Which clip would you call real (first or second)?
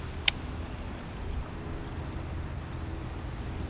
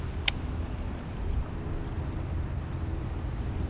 first